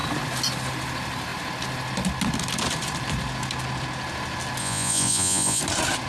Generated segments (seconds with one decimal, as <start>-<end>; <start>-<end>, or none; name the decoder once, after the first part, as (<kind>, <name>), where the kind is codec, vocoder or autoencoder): 4.6-5.6 (vocoder, Vocos)